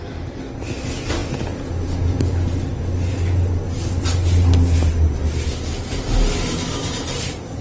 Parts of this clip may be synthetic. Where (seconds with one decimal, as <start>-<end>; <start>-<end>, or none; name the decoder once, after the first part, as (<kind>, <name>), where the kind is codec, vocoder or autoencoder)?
none